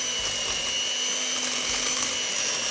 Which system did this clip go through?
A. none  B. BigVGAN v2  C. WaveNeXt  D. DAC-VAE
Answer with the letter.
A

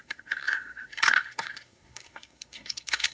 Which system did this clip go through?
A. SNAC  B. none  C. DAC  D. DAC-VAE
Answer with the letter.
A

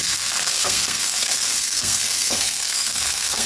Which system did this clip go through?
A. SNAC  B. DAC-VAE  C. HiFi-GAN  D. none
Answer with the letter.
A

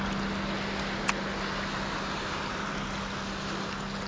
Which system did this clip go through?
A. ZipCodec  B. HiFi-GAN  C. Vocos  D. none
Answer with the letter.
D